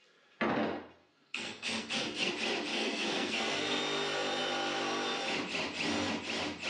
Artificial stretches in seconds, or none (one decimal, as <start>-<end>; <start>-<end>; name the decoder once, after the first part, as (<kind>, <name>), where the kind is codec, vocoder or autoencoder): 1.0-2.3 (codec, SNAC); 2.7-3.8